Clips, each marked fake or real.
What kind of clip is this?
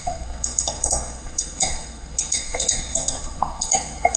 fake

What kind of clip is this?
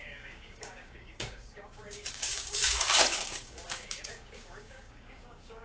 fake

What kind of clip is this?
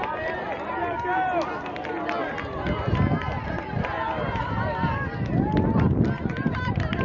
real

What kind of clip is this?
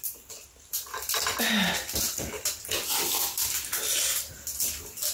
real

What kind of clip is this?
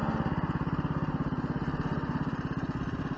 real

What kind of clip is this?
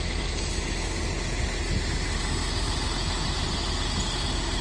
real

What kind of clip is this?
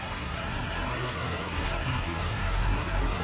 fake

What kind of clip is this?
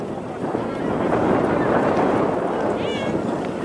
real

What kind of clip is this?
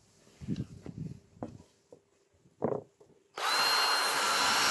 real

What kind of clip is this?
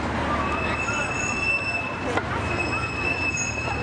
real